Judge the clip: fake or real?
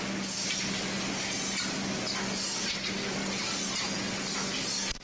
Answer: real